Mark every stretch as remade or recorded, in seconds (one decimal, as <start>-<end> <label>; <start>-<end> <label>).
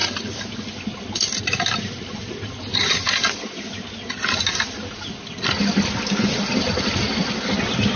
0.0-8.0 recorded